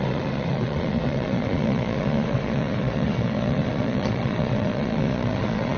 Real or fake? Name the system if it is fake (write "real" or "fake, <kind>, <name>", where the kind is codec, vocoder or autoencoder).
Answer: fake, vocoder, Vocos